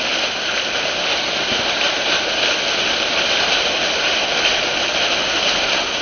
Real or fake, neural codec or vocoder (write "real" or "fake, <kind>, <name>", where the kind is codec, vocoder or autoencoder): real